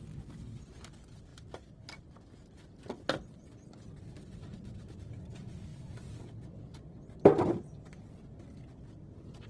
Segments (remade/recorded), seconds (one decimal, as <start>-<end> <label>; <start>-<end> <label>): 0.0-9.5 recorded